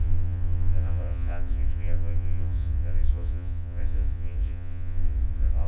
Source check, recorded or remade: remade